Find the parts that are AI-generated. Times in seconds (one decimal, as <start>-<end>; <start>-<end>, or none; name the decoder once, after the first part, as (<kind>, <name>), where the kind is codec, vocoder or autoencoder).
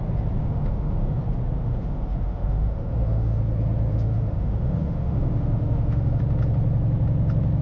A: 0.4-1.2 (autoencoder, DAC-VAE); 1.6-3.4; 3.9-6.2